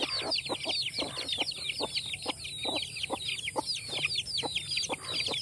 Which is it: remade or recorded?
recorded